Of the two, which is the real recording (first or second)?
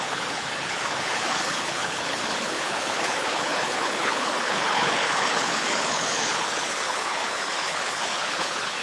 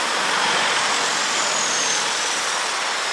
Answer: second